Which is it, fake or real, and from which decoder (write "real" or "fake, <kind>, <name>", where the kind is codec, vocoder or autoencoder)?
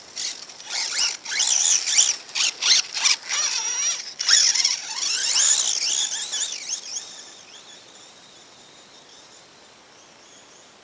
real